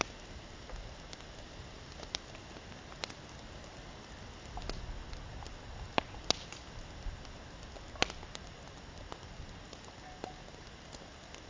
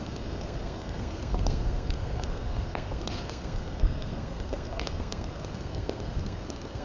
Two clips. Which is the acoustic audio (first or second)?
first